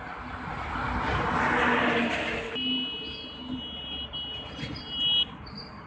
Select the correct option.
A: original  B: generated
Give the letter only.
A